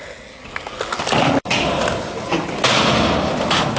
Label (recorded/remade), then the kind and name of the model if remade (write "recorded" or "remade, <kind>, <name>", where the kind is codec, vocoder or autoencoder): recorded